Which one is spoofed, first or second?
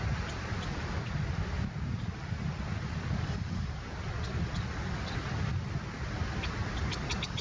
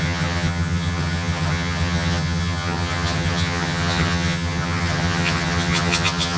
second